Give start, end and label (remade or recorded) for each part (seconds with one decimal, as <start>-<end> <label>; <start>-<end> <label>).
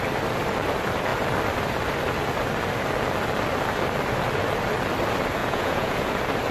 0.0-5.4 recorded; 5.4-6.1 remade; 6.1-6.5 recorded